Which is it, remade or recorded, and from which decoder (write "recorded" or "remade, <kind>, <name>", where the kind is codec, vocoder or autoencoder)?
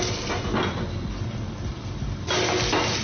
recorded